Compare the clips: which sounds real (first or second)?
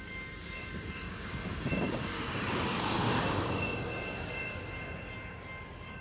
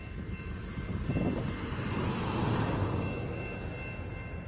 second